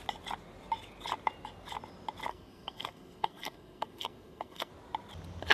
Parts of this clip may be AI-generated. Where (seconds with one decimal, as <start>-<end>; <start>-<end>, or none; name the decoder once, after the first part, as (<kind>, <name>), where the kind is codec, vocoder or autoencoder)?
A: 2.3-4.7 (codec, SNAC)